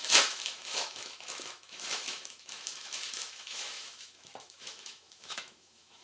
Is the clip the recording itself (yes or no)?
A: no